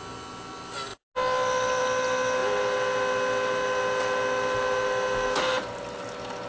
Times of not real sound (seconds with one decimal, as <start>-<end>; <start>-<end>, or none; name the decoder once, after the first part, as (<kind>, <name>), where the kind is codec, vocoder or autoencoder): none